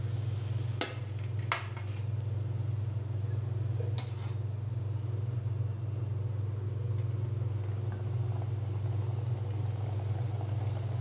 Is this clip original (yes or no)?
yes